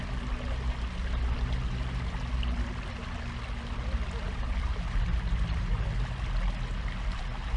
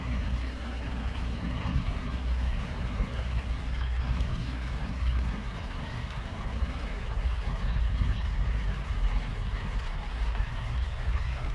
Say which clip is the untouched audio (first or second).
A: first